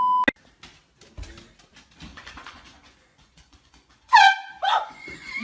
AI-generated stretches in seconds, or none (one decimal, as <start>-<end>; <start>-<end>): 2.1-5.4